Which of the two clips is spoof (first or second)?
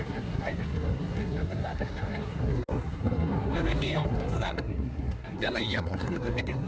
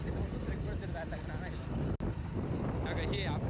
first